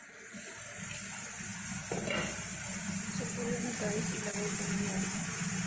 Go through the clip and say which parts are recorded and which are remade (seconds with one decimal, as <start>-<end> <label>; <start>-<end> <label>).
0.0-5.7 recorded